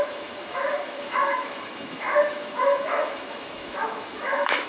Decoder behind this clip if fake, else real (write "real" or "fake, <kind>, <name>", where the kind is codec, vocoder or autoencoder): fake, autoencoder, DAC-VAE